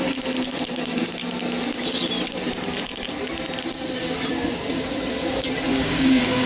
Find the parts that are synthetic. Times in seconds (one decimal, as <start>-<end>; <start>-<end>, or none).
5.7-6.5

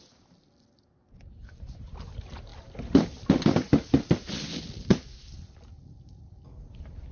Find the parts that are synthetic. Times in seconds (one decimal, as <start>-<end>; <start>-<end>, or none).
none

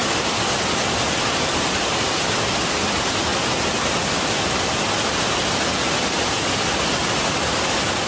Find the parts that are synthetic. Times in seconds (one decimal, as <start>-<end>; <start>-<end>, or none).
none

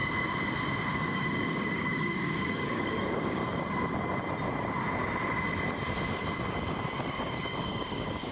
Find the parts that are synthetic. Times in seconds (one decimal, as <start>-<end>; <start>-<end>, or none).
0.9-3.4; 7.1-8.3